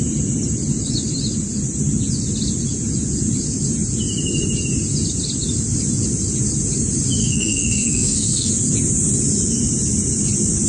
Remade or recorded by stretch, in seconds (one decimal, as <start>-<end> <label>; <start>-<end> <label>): 0.0-7.2 recorded; 7.2-8.5 remade; 8.5-10.7 recorded